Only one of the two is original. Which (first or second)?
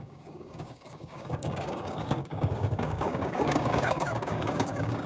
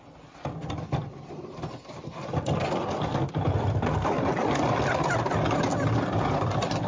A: second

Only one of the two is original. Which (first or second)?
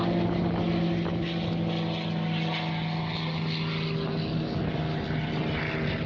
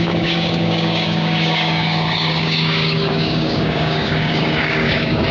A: first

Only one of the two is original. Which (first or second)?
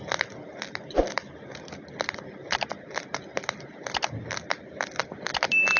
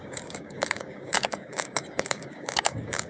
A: first